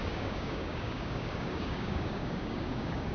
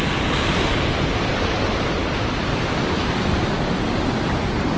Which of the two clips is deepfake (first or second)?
first